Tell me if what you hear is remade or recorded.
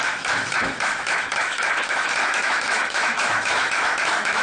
remade